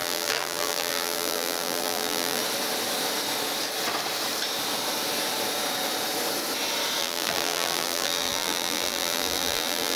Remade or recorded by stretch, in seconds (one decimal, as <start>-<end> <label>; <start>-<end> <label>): 0.0-2.4 remade; 2.4-7.0 recorded; 7.0-10.0 remade